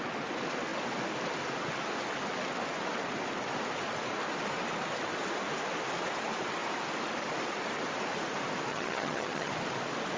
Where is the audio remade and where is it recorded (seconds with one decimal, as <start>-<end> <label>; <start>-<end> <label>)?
0.0-8.7 recorded; 8.7-9.5 remade; 9.5-10.2 recorded